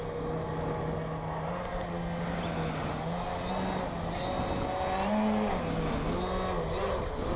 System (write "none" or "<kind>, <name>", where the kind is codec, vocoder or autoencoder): none